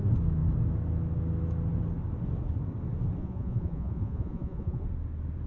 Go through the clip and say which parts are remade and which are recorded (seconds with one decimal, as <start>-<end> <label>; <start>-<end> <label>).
0.0-3.2 recorded; 3.2-4.8 remade; 4.8-5.5 recorded